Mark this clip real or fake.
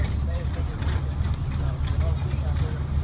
real